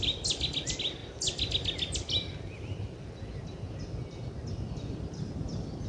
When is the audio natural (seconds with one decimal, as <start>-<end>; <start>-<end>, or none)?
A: 0.0-5.9